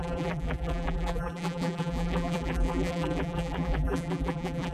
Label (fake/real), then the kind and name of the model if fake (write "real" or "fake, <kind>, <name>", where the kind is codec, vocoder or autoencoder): fake, vocoder, BigVGAN v2